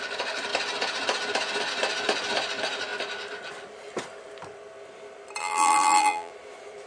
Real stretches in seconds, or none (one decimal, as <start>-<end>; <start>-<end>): 0.0-5.4; 6.3-6.9